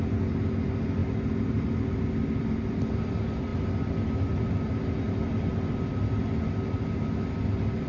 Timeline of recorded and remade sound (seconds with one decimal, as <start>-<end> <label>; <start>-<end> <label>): 0.0-7.9 recorded